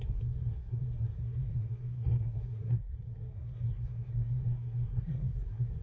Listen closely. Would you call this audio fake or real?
fake